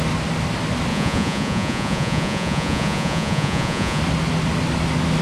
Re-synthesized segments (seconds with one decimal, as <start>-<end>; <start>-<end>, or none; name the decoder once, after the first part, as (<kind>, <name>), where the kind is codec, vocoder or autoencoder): 0.9-4.0 (vocoder, Vocos)